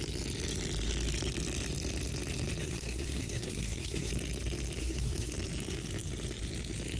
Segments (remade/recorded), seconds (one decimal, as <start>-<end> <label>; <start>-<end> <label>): 0.0-2.6 recorded; 2.6-4.1 remade; 4.1-4.8 recorded; 4.8-5.3 remade; 5.3-7.0 recorded